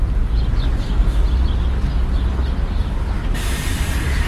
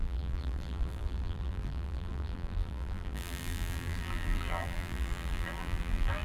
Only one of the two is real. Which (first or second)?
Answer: first